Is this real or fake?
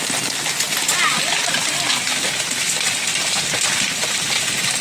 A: real